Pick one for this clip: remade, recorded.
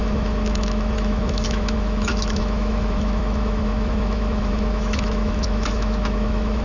remade